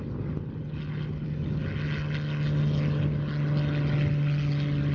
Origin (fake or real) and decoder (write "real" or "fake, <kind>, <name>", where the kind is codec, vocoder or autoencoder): real